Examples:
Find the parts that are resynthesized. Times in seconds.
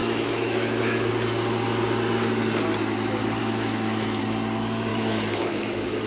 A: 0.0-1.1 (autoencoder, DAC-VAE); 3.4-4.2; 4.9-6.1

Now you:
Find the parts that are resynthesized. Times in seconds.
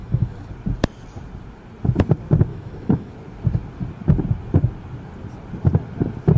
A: 0.0-0.5 (autoencoder, DAC-VAE); 2.5-3.1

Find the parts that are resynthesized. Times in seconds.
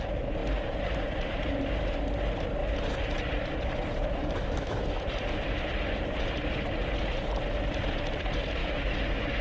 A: 4.2-5.0 (autoencoder, DAC-VAE); 8.6-9.4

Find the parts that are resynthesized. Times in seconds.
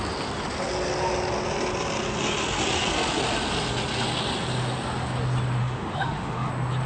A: 5.6-6.5 (autoencoder, DAC-VAE)